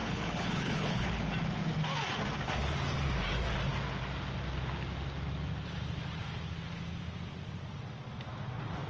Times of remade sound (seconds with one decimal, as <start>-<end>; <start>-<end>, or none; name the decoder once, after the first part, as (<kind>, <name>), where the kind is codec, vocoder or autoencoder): 0.0-1.3 (codec, HILCodec)